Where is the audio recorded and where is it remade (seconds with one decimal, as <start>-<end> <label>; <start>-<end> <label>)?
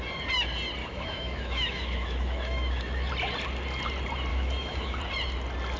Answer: 0.0-0.8 recorded; 0.8-3.1 remade; 3.1-4.3 recorded; 4.3-5.0 remade; 5.0-5.8 recorded